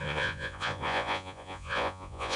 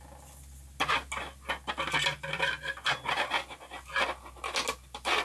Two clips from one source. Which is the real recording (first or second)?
second